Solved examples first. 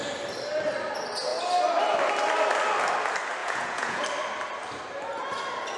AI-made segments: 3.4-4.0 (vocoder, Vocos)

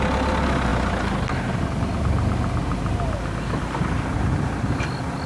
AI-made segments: 2.6-3.6 (vocoder, BigVGAN v2)

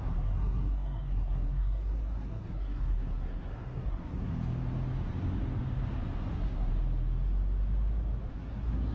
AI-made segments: 0.0-4.3 (codec, SNAC); 6.3-6.7; 8.3-8.9

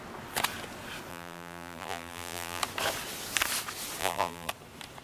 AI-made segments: 1.1-2.6 (vocoder, BigVGAN v2); 4.0-4.5